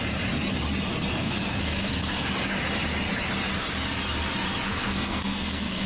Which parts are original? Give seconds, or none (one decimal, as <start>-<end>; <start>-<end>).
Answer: 0.0-1.2; 2.3-4.7